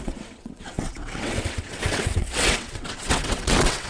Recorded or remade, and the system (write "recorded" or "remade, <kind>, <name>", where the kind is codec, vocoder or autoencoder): remade, vocoder, WaveNeXt